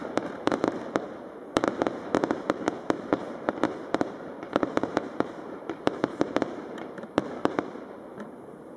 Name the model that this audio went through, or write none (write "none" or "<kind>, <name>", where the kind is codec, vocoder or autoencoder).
vocoder, BigVGAN v2